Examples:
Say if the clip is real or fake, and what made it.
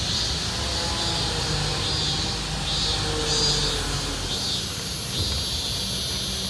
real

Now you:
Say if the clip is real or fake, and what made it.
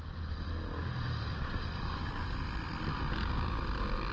real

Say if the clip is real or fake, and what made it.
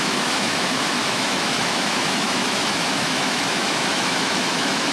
fake, autoencoder, DAC-VAE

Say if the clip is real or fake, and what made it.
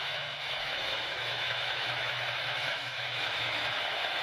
fake, autoencoder, DAC-VAE